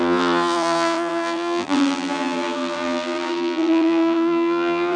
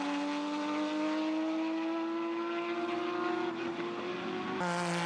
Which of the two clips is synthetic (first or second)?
first